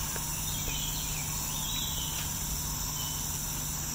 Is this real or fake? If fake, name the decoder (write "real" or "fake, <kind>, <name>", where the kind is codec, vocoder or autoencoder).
real